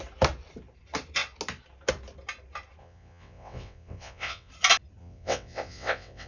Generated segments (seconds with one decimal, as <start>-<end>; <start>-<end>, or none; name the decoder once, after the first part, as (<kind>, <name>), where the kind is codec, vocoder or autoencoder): 2.8-4.5 (vocoder, WaveNeXt); 5.0-6.3